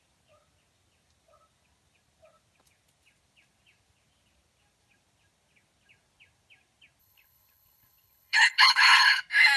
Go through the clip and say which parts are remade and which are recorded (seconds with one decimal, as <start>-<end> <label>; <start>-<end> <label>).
0.0-7.0 recorded; 7.0-9.2 remade; 9.2-9.6 recorded